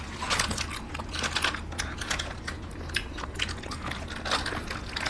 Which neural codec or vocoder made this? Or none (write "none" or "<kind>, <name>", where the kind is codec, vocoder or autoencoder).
none